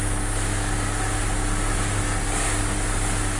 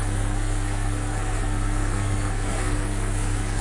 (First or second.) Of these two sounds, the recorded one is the first